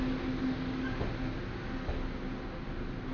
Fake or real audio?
real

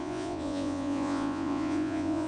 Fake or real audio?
fake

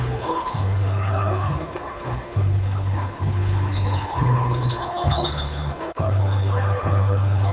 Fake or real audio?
fake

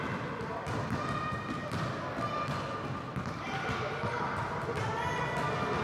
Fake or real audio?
real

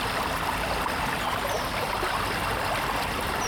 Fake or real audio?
real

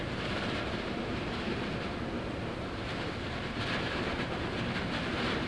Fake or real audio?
fake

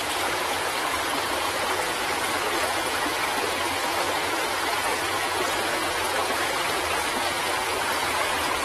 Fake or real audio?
fake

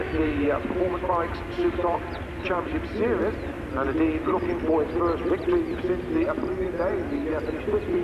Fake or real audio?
real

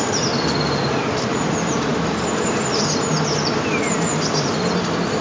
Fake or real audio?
fake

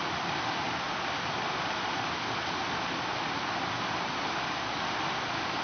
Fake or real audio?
real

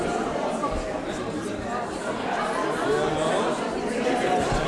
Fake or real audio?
real